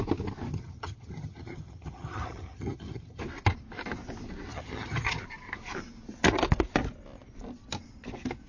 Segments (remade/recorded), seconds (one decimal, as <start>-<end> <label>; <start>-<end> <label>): 0.0-0.5 recorded; 0.5-3.2 remade; 3.2-4.5 recorded; 4.5-5.2 remade; 5.2-8.5 recorded